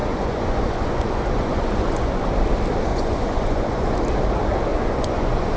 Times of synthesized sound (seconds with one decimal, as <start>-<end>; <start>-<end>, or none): 0.0-2.2; 2.9-3.9; 4.7-5.6